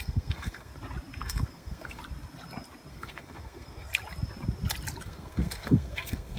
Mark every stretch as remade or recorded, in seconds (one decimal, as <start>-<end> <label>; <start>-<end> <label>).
0.0-0.7 remade; 0.7-1.2 recorded; 1.2-2.0 remade; 2.0-2.9 recorded; 2.9-3.9 remade; 3.9-5.0 recorded; 5.0-6.4 remade